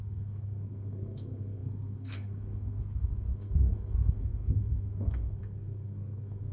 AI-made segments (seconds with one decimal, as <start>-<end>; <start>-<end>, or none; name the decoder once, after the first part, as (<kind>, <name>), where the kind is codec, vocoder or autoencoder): 0.0-6.5 (codec, SNAC)